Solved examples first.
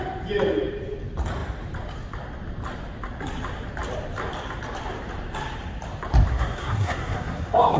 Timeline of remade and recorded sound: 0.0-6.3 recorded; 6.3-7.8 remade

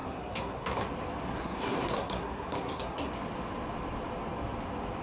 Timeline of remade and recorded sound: 0.0-0.8 remade; 0.8-1.3 recorded; 1.3-3.1 remade; 3.1-5.0 recorded

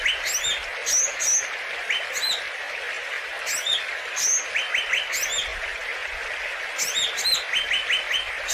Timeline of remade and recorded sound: 0.0-8.5 recorded

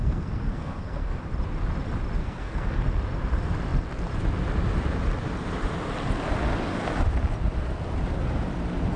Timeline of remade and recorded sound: 0.0-1.2 remade; 1.2-2.2 recorded; 2.2-2.8 remade; 2.8-9.0 recorded

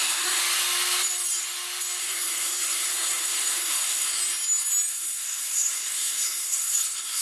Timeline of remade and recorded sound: 0.0-0.4 remade; 0.4-2.0 recorded; 2.0-4.2 remade; 4.2-4.9 recorded; 4.9-7.2 remade

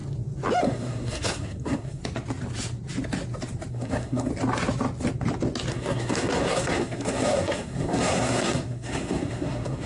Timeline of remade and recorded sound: 0.0-0.6 recorded; 0.6-2.0 remade; 2.0-3.7 recorded; 3.7-4.3 remade; 4.3-5.7 recorded; 5.7-9.9 remade

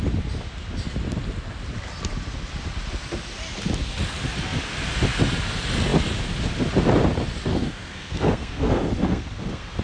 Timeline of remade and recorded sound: 0.0-7.5 recorded; 7.5-9.8 remade